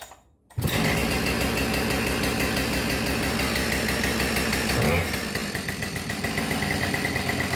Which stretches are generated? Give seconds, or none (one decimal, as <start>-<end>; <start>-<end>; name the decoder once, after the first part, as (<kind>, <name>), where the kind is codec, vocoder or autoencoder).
none